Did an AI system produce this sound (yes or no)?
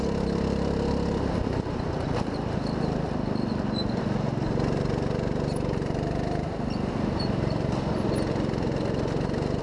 no